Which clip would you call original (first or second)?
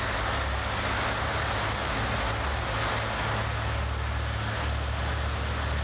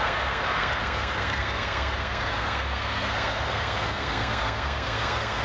first